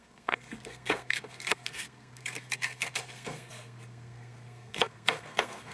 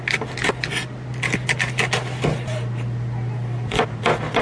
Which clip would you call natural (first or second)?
second